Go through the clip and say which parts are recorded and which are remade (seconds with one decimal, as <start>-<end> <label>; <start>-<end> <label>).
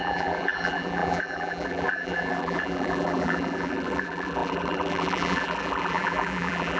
0.0-6.8 remade